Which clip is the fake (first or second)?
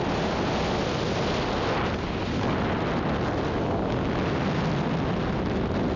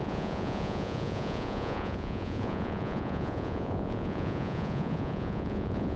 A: second